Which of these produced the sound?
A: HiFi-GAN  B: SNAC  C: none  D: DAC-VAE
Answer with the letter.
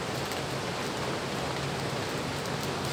C